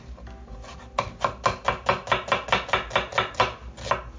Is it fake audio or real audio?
real